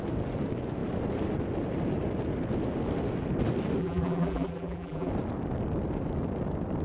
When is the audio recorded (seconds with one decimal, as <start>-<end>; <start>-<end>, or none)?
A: 0.0-3.8; 5.1-6.8